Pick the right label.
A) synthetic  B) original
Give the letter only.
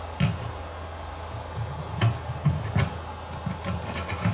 B